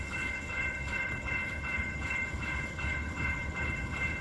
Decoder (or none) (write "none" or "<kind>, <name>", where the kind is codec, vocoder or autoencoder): codec, HILCodec